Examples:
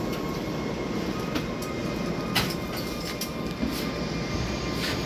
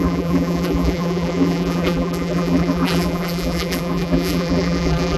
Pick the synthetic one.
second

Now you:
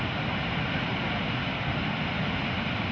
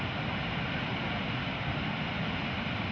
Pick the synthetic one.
second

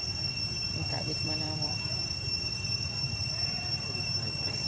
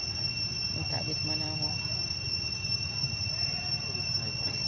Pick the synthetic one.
first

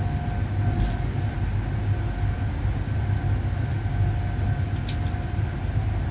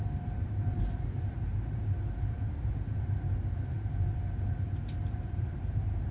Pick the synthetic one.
second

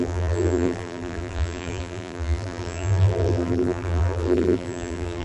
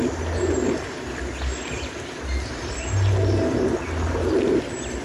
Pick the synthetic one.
first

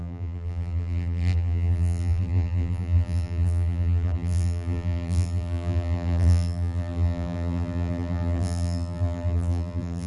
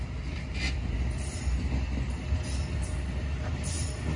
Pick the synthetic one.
first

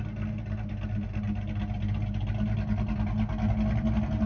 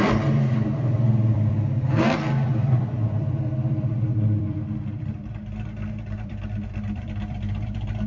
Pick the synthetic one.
second